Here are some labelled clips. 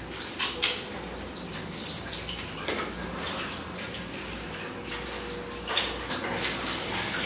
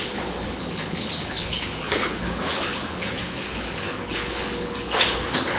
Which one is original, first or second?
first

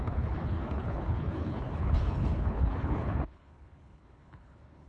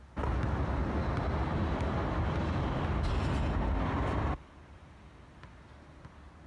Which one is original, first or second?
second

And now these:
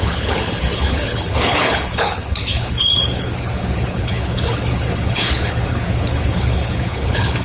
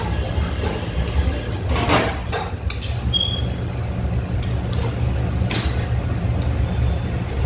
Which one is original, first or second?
second